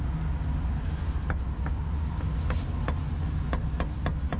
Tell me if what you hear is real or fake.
real